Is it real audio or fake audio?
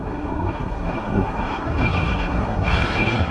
fake